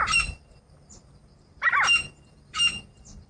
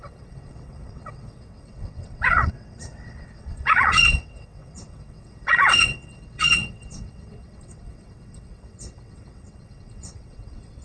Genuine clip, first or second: first